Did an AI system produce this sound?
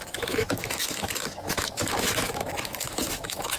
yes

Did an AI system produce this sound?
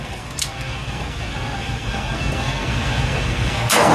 yes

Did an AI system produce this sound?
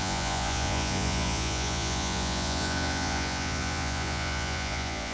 yes